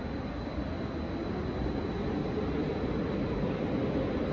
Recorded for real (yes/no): yes